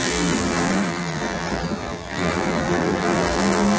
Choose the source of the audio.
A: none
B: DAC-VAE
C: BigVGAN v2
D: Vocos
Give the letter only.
C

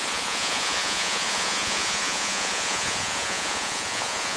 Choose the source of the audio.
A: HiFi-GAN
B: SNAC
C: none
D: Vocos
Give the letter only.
D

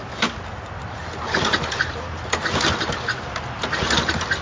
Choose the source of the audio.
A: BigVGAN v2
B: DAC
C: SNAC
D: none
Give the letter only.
D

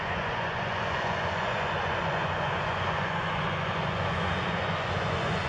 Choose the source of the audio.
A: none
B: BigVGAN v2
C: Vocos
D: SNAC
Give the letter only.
C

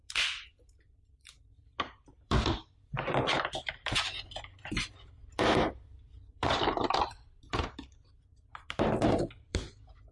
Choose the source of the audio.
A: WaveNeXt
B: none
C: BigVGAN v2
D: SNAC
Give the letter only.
C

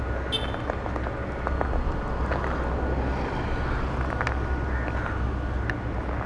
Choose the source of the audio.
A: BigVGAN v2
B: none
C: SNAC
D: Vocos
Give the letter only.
B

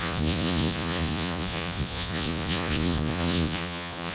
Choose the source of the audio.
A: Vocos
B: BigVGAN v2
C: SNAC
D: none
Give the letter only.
A